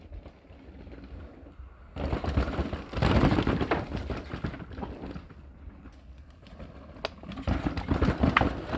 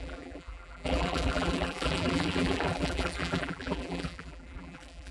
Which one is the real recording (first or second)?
first